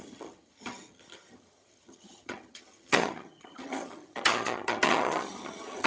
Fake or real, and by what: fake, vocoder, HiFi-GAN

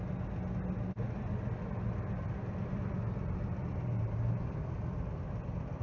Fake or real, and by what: real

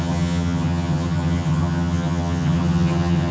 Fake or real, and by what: fake, vocoder, HiFi-GAN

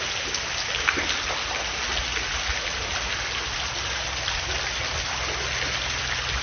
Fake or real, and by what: real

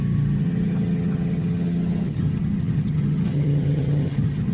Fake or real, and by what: fake, vocoder, HiFi-GAN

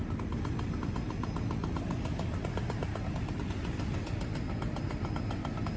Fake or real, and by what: real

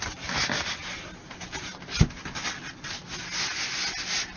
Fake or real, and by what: real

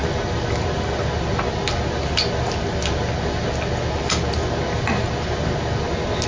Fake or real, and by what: real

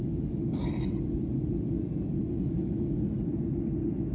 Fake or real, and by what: real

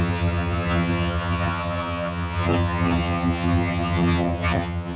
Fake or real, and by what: fake, vocoder, HiFi-GAN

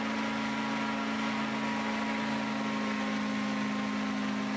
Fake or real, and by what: real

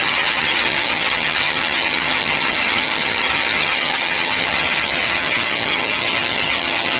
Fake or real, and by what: fake, vocoder, HiFi-GAN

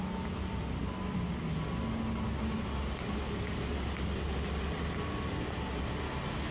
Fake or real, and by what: real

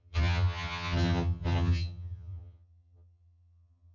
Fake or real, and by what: fake, vocoder, HiFi-GAN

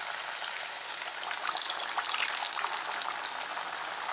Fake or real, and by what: real